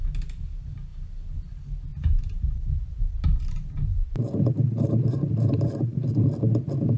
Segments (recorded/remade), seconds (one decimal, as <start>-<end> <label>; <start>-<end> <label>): 0.0-1.9 recorded; 1.9-6.1 remade; 6.1-7.0 recorded